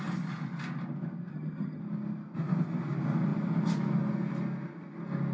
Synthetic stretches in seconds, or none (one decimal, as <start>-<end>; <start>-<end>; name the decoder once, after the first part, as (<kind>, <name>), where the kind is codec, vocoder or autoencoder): 1.3-1.8 (vocoder, HiFi-GAN)